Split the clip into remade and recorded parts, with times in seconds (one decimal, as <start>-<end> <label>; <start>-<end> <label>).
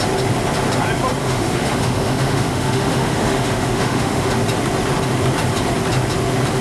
0.0-1.2 recorded; 1.2-4.3 remade; 4.3-6.6 recorded